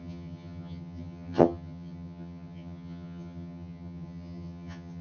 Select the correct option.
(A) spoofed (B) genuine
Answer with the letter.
A